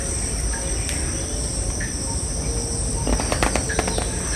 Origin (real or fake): real